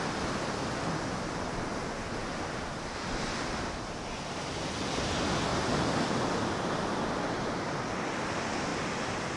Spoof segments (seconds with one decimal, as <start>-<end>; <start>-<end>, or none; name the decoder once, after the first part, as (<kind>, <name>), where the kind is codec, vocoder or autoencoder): 2.2-4.5 (vocoder, BigVGAN v2); 5.5-6.6; 8.7-9.4